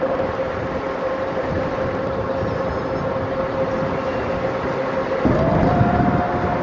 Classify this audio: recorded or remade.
recorded